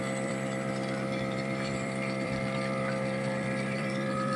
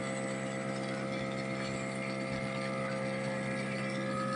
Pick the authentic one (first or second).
second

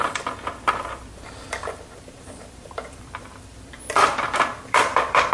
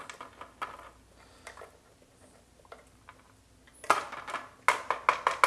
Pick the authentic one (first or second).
second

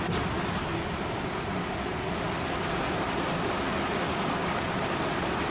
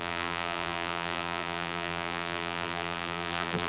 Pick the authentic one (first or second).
first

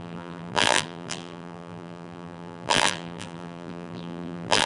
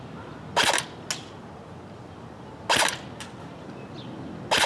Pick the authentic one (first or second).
second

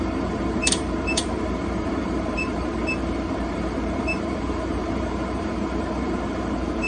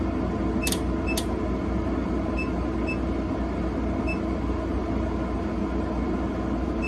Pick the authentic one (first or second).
second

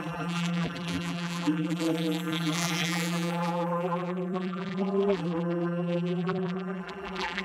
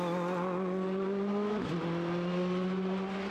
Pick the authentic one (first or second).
second